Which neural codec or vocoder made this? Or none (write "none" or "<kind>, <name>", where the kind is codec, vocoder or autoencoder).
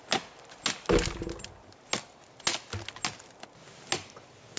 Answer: none